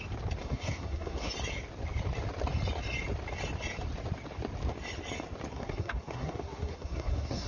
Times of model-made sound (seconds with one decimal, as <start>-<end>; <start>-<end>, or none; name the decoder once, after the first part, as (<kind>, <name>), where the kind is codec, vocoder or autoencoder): 0.4-1.3 (codec, SNAC); 5.5-7.5